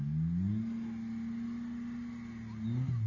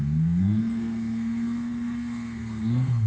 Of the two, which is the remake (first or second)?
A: second